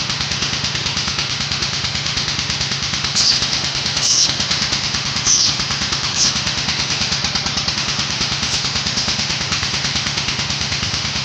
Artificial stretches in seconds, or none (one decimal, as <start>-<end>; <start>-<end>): 0.0-7.2; 7.7-11.2